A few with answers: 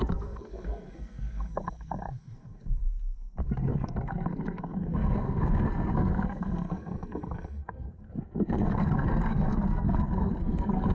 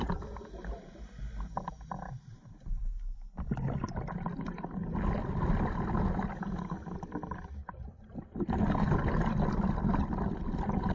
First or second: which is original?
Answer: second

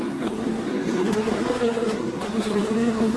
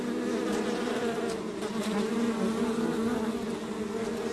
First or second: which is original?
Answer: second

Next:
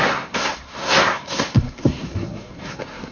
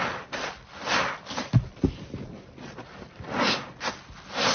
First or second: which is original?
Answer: second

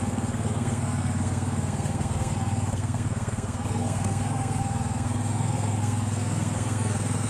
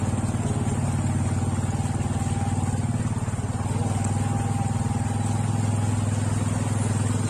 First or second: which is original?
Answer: second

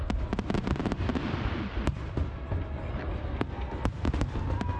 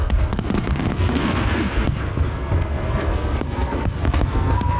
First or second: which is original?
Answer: first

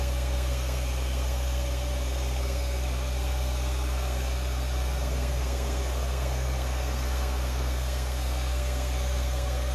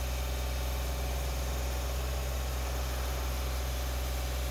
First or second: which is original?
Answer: second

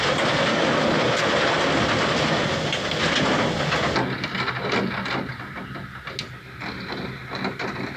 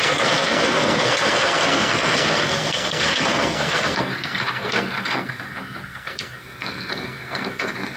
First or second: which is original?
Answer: first